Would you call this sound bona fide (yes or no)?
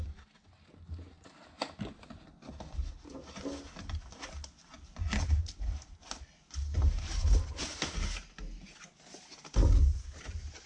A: yes